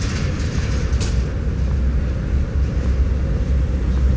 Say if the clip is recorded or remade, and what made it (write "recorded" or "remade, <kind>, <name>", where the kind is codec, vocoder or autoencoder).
recorded